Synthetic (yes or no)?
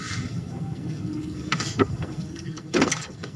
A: yes